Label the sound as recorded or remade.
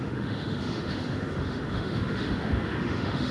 remade